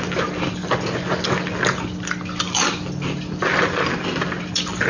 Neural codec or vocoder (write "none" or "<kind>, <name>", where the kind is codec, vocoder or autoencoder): none